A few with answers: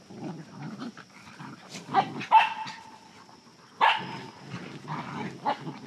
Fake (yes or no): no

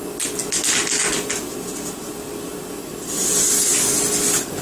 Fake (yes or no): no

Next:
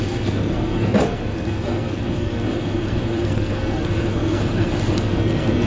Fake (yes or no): yes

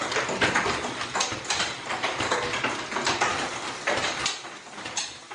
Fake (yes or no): no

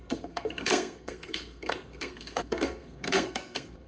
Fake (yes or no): yes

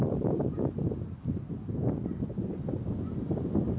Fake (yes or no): no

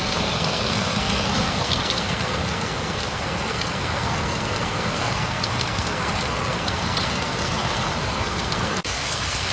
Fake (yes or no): yes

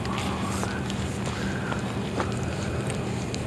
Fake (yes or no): no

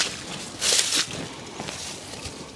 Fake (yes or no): no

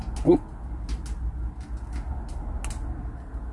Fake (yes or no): no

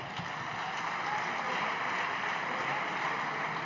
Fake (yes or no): no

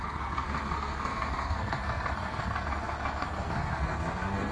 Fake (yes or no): yes